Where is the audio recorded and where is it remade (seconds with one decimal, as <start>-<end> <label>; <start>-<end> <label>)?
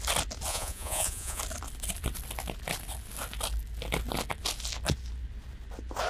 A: 0.0-0.5 recorded; 0.5-1.4 remade; 1.4-6.1 recorded